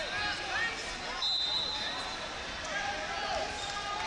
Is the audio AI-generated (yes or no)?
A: no